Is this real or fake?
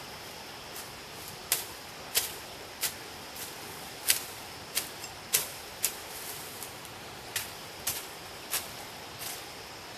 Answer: fake